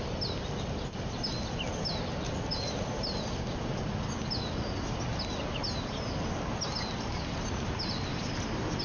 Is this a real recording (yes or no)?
yes